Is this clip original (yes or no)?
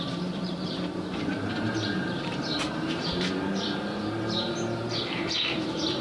no